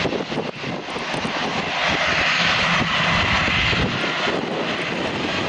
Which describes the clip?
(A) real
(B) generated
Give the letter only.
A